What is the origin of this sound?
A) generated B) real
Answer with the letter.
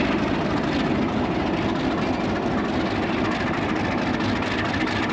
B